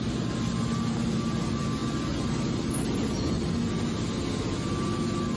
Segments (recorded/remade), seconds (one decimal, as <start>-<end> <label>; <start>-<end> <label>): 0.0-5.4 recorded